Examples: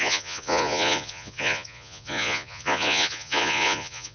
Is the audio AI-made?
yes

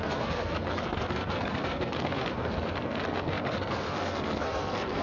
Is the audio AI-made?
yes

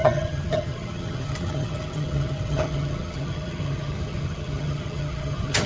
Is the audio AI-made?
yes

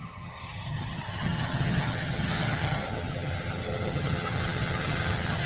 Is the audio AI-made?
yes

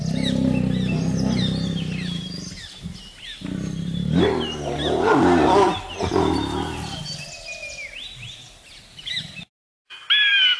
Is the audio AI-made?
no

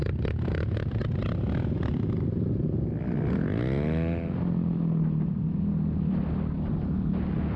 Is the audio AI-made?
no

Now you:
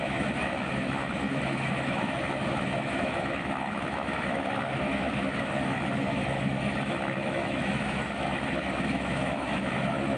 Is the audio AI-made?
yes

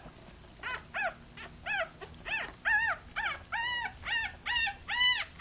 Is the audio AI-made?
no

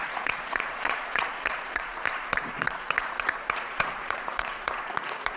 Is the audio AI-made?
yes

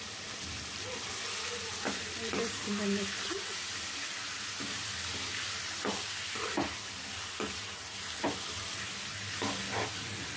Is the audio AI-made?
no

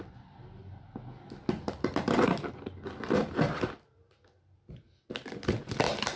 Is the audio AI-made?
no